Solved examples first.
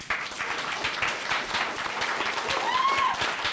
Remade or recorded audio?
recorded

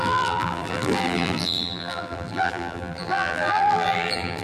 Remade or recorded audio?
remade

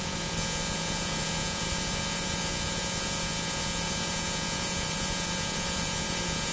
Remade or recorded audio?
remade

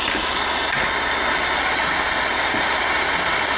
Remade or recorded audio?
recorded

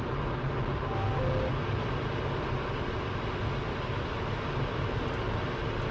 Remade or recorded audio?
recorded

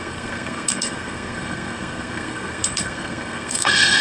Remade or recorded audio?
remade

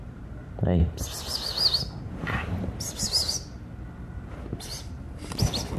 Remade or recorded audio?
recorded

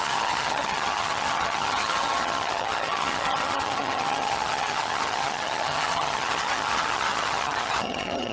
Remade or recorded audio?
remade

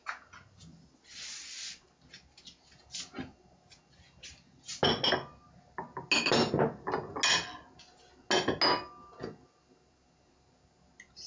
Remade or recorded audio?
recorded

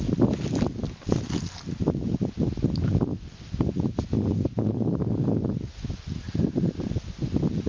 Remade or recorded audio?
recorded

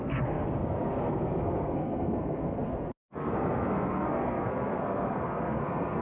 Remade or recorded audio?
remade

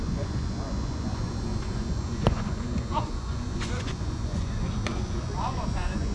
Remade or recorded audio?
remade